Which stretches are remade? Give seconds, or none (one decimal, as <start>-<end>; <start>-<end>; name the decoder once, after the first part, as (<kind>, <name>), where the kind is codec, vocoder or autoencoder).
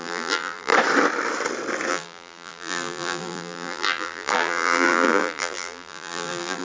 0.0-0.7 (vocoder, BigVGAN v2); 1.9-6.6